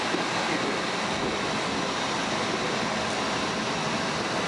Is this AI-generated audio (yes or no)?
no